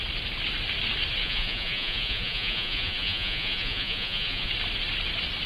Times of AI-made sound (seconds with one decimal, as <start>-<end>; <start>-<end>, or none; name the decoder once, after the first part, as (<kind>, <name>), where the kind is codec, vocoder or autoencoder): 1.2-4.5 (vocoder, Vocos)